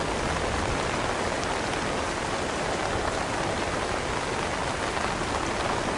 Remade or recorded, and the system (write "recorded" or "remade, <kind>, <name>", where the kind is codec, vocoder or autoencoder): recorded